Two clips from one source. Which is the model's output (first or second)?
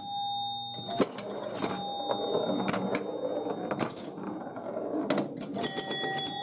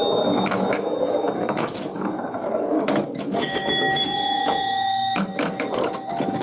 second